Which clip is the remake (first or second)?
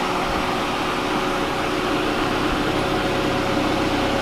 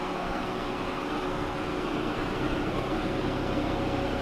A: second